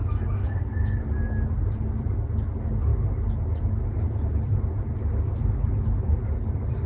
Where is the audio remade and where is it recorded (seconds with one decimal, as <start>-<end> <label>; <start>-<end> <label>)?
0.0-0.4 recorded; 0.4-1.0 remade; 1.0-6.9 recorded